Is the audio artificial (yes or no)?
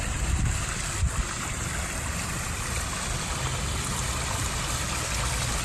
no